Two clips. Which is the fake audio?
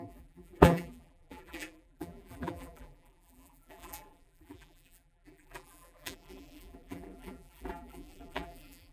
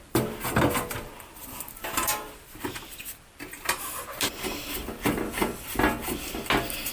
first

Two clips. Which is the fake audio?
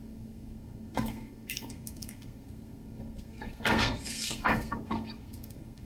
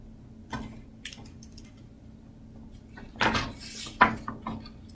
first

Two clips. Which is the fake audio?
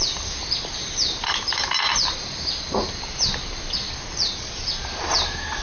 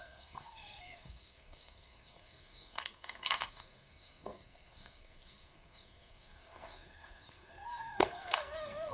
second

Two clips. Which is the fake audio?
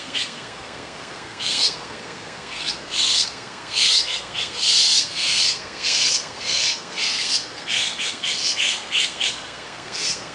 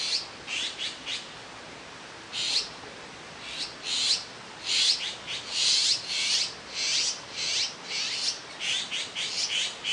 first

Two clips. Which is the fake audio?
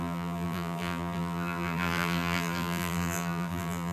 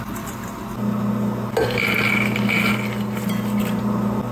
first